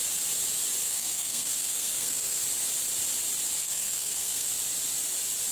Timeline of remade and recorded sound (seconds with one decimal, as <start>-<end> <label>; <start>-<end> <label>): 0.0-0.8 recorded; 0.8-2.4 remade; 2.4-3.6 recorded; 3.6-4.5 remade; 4.5-5.5 recorded